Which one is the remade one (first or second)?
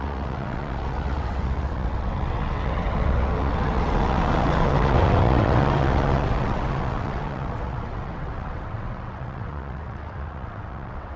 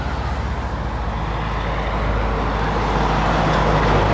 first